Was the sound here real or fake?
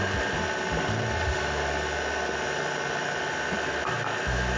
real